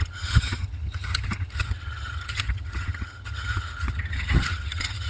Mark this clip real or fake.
fake